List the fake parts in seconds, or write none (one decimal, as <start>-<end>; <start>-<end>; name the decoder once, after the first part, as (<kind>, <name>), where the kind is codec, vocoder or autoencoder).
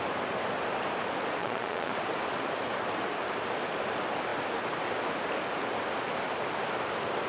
1.4-1.9 (vocoder, Vocos)